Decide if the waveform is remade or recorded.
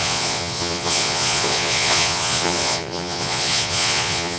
remade